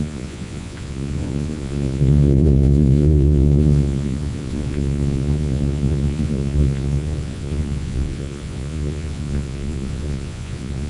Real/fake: fake